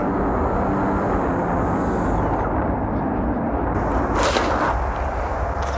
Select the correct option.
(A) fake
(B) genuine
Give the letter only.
B